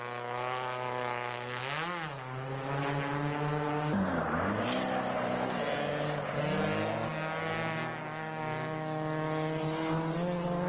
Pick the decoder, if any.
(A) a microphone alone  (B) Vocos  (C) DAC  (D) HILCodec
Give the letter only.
A